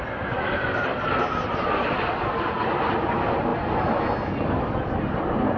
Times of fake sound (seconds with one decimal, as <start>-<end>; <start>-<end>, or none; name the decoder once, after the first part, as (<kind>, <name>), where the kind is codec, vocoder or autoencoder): none